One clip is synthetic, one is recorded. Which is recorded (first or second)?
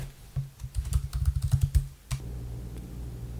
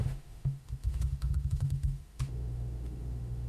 first